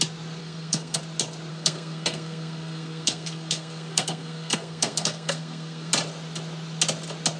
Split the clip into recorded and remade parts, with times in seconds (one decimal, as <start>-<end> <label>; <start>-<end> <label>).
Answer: 0.0-0.4 recorded; 0.4-1.0 remade; 1.0-1.5 recorded; 1.5-5.9 remade; 5.9-7.4 recorded